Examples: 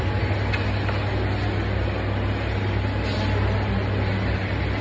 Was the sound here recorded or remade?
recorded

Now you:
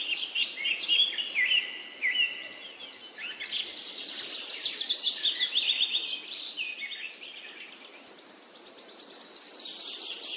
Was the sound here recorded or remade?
recorded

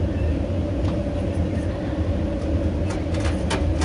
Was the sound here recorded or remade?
recorded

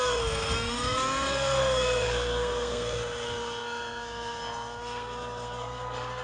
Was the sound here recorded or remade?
remade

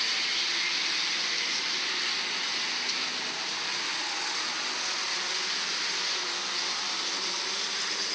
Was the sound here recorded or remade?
recorded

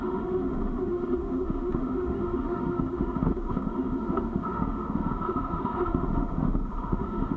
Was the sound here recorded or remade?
remade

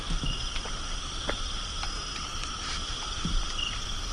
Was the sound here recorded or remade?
recorded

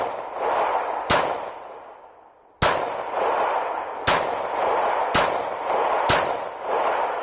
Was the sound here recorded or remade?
recorded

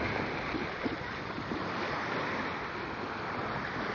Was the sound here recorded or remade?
recorded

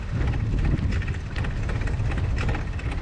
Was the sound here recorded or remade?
recorded